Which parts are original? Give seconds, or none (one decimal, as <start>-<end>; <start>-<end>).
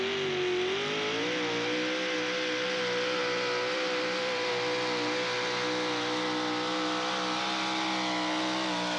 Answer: 0.0-3.2; 4.5-9.0